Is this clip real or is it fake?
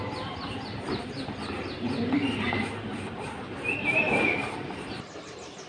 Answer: fake